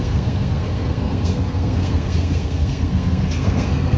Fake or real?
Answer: fake